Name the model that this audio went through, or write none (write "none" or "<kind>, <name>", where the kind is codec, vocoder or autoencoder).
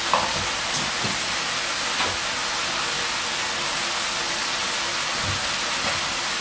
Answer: none